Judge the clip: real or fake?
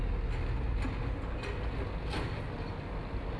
real